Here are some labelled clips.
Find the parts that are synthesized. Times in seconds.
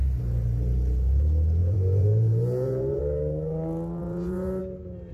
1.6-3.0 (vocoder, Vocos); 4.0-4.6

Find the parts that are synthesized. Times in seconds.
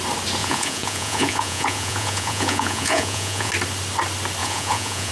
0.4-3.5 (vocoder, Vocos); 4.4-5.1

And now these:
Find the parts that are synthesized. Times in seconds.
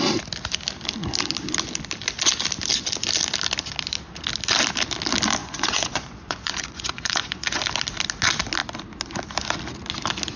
5.4-7.6 (vocoder, Vocos)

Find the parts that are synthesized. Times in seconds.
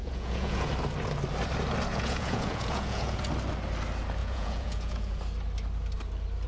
0.0-0.7 (vocoder, Vocos); 1.9-3.3; 4.2-5.2